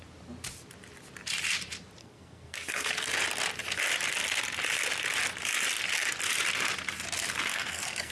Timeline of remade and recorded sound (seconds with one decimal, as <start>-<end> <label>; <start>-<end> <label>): 0.0-2.0 recorded; 2.0-2.9 remade; 2.9-7.5 recorded; 7.5-8.1 remade